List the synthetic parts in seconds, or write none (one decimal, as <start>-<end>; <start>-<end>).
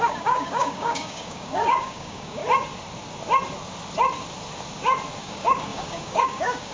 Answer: 0.0-2.4; 5.2-6.7